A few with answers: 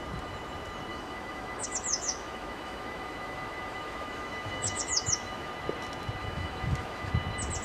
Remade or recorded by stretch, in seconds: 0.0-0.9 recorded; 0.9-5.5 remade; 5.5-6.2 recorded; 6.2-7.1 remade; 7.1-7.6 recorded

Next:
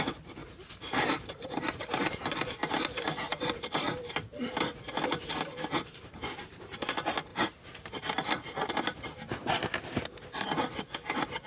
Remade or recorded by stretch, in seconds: 0.0-0.4 recorded; 0.4-2.1 remade; 2.1-5.5 recorded; 5.5-6.0 remade; 6.0-7.3 recorded; 7.3-8.0 remade; 8.0-11.5 recorded

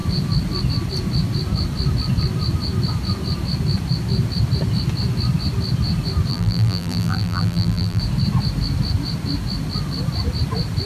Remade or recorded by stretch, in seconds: 0.0-6.3 recorded; 6.3-8.0 remade; 8.0-10.9 recorded

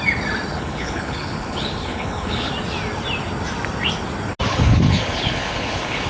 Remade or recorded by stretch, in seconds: 0.0-0.5 recorded; 0.5-2.5 remade; 2.5-4.5 recorded; 4.5-6.1 remade

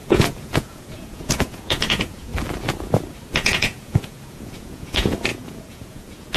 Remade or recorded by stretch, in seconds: 0.0-2.3 remade; 2.3-3.3 recorded; 3.3-6.4 remade